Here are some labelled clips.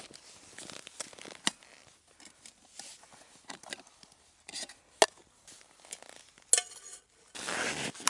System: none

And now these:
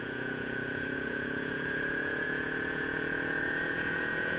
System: vocoder, Vocos